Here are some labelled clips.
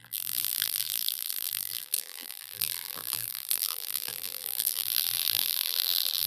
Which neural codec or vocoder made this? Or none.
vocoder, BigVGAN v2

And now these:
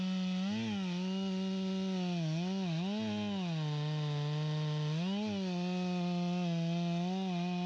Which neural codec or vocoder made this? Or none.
none